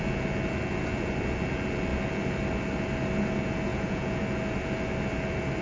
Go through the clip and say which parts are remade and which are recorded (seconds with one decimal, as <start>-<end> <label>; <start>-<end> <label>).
0.0-3.7 recorded; 3.7-4.2 remade; 4.2-5.6 recorded